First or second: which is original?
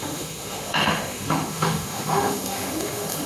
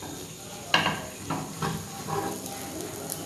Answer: second